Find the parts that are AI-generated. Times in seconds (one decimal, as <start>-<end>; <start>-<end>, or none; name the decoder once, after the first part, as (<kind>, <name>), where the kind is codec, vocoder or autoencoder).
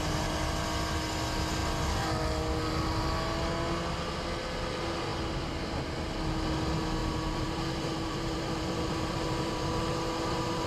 7.0-10.7 (vocoder, BigVGAN v2)